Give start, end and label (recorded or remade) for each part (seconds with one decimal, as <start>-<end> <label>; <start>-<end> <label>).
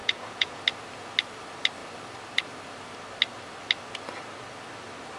0.0-0.6 remade; 0.6-5.2 recorded